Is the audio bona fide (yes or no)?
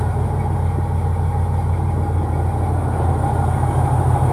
yes